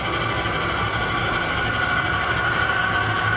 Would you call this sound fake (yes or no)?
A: no